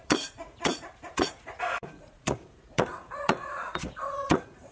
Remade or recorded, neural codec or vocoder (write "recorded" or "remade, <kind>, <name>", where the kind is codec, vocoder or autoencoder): remade, vocoder, Vocos